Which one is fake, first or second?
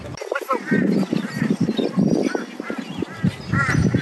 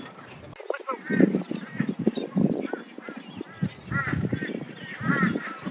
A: first